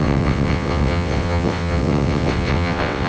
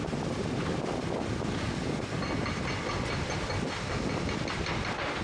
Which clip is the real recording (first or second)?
second